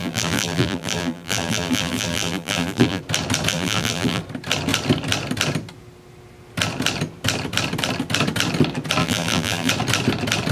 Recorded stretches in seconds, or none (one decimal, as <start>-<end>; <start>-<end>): 3.0-3.5; 4.2-9.0; 9.7-10.5